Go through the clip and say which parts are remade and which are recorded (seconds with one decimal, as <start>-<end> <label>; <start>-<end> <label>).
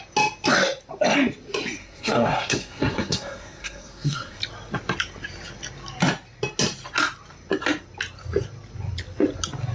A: 0.0-1.8 recorded; 1.8-4.4 remade; 4.4-9.7 recorded